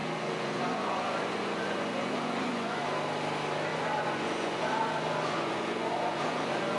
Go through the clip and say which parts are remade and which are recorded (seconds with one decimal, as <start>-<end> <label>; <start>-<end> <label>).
0.0-2.8 remade; 2.8-3.7 recorded; 3.7-6.8 remade